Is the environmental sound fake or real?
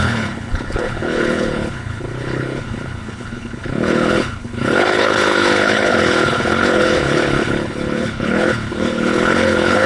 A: fake